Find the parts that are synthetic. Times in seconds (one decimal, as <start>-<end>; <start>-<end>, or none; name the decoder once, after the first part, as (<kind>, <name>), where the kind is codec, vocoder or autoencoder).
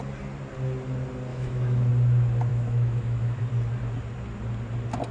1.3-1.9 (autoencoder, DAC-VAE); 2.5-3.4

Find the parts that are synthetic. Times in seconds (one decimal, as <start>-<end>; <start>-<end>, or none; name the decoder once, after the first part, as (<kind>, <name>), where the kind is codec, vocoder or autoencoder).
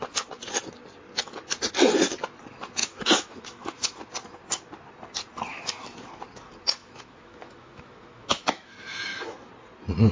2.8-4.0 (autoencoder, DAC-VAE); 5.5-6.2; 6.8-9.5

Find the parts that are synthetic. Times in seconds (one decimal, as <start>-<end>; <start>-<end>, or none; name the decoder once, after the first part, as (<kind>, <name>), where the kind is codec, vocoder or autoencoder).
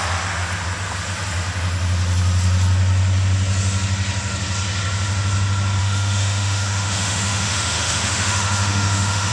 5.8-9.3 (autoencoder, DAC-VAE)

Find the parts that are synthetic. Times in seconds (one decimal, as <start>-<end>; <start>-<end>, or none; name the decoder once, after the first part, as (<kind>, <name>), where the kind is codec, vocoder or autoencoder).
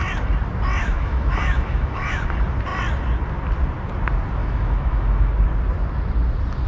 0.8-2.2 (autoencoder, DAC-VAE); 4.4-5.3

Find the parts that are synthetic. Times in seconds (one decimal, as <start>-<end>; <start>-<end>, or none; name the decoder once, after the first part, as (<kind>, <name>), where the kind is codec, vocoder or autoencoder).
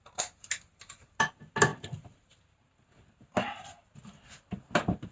none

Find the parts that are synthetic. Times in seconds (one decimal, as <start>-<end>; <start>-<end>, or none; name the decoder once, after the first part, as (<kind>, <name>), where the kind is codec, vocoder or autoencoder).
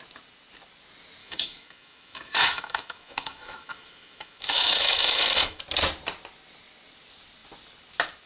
1.2-5.6 (autoencoder, DAC-VAE)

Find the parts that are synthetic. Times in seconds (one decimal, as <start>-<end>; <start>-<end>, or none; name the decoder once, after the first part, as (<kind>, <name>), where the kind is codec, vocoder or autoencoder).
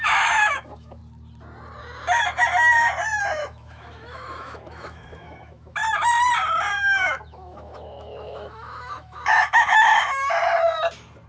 0.0-1.0 (autoencoder, DAC-VAE); 3.2-5.8; 6.7-10.4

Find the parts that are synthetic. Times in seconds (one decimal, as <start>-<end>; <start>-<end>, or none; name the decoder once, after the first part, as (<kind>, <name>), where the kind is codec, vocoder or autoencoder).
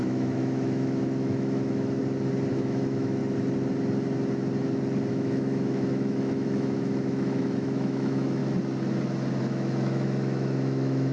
0.0-2.0 (autoencoder, DAC-VAE); 2.5-3.2; 5.1-8.4; 9.4-11.1